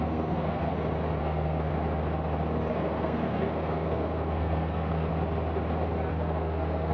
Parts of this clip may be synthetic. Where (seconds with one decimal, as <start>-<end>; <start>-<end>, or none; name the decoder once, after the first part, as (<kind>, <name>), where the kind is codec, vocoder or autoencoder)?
0.0-0.7 (codec, SNAC); 1.2-1.7; 2.7-5.1; 6.1-6.9